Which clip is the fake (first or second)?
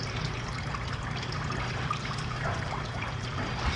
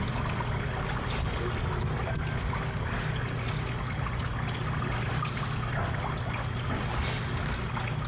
first